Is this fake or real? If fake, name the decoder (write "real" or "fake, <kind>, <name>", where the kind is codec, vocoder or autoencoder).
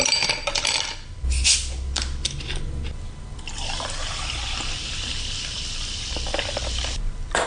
real